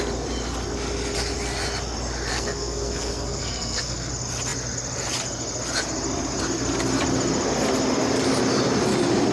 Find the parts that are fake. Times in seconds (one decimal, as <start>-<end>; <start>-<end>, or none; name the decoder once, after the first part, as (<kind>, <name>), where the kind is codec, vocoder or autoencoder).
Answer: 2.3-4.1 (codec, SNAC)